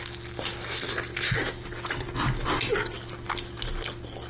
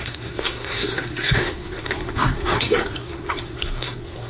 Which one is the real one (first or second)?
first